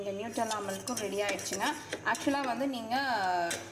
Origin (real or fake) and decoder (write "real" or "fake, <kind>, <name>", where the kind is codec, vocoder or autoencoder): real